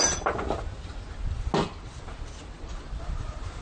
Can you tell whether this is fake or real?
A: real